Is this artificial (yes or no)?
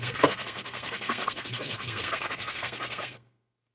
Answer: yes